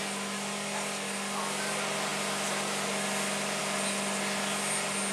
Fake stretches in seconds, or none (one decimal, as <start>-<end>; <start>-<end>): none